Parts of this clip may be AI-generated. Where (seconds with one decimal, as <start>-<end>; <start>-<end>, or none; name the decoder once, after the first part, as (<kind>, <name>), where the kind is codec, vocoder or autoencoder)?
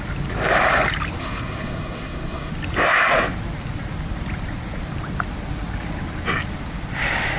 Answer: 1.2-2.5 (codec, SNAC)